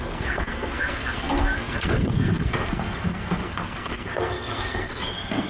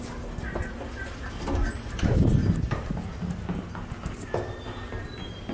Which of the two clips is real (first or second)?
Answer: second